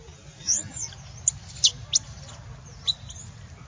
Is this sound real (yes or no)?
yes